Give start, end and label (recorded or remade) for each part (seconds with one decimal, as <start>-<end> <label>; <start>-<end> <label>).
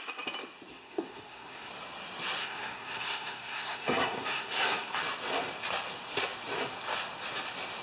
0.0-0.7 recorded; 0.7-1.7 remade; 1.7-2.4 recorded; 2.4-5.0 remade; 5.0-7.8 recorded